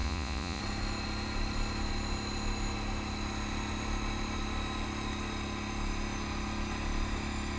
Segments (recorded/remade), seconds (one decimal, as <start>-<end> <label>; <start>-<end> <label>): 0.0-0.6 remade; 0.6-7.6 recorded